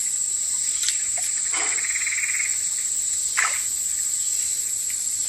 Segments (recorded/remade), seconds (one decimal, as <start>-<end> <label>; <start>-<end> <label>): 0.0-5.3 recorded